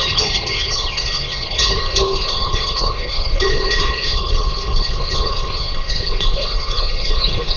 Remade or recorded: remade